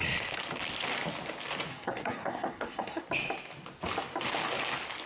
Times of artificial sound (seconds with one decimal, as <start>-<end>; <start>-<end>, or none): 1.7-3.0